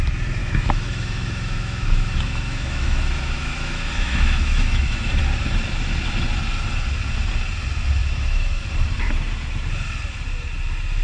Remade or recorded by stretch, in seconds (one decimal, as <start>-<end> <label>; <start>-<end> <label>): 0.0-0.4 recorded; 0.4-5.2 remade; 5.2-8.0 recorded; 8.0-8.6 remade; 8.6-11.0 recorded